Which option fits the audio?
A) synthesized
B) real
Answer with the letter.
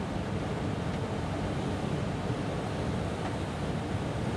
B